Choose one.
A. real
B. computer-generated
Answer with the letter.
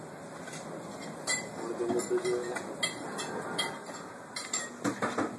A